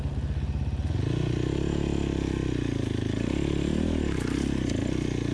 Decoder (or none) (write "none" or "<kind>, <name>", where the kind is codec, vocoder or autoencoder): none